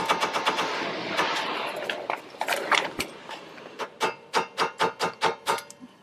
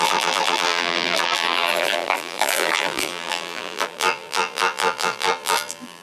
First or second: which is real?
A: first